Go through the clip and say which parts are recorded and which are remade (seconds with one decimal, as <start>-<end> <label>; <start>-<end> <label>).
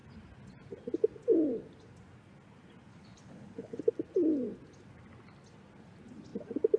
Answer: 0.0-2.9 recorded; 2.9-3.8 remade; 3.8-6.8 recorded